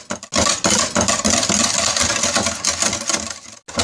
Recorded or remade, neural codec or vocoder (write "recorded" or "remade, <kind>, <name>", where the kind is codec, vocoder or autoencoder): recorded